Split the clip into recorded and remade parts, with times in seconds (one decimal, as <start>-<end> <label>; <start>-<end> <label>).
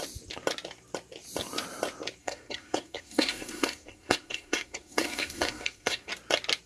0.0-2.2 recorded; 2.2-6.1 remade; 6.1-6.7 recorded